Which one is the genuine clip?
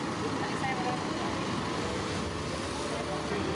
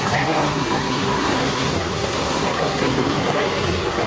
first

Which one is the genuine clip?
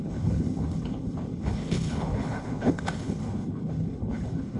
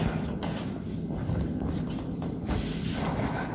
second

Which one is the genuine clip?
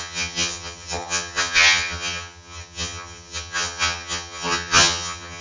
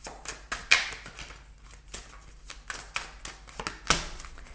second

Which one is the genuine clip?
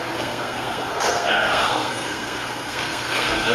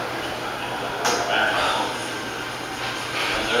second